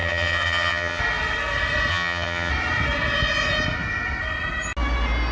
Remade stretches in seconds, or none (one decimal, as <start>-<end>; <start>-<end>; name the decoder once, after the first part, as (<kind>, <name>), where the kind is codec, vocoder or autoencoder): 0.0-1.0 (vocoder, HiFi-GAN); 1.9-2.5